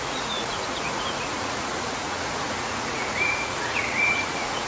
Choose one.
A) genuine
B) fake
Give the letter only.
B